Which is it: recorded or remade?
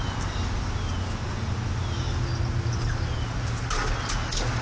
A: recorded